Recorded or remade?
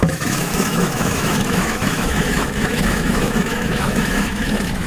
remade